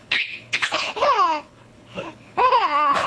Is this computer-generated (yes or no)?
yes